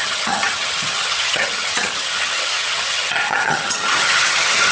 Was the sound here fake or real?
fake